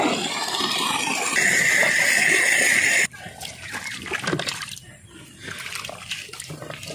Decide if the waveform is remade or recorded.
recorded